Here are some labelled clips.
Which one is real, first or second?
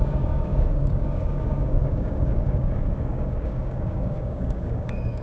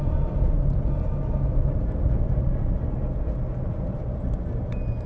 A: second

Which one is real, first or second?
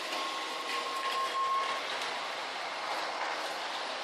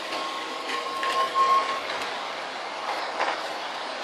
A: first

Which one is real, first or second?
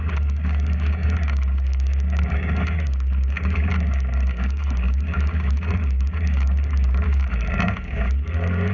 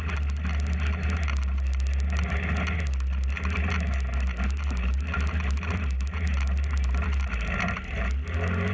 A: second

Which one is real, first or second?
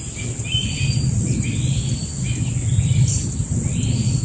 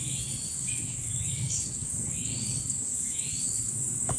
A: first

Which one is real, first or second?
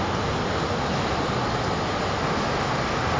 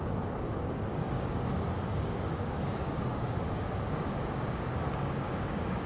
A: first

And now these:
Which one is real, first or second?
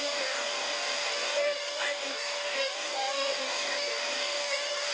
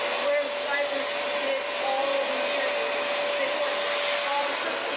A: second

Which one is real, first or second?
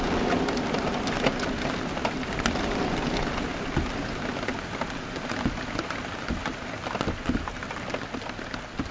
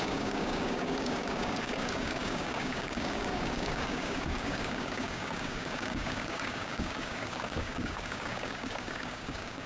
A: first